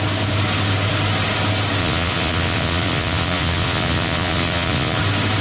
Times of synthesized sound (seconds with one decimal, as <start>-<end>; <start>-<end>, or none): 1.8-5.0